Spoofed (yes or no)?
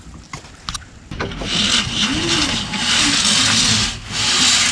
no